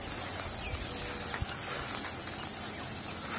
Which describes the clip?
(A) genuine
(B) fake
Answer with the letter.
A